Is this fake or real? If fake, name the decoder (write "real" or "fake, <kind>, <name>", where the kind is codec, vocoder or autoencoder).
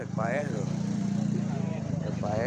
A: fake, vocoder, BigVGAN v2